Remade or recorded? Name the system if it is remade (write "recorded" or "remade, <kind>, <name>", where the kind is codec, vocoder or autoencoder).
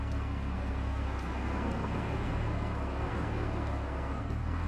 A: remade, codec, SNAC